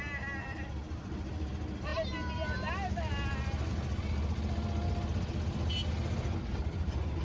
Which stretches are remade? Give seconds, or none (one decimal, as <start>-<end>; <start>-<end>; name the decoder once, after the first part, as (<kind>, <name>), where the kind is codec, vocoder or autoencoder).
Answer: none